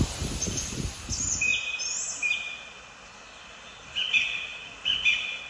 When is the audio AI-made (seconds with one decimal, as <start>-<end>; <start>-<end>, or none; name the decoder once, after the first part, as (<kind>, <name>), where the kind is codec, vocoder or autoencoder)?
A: none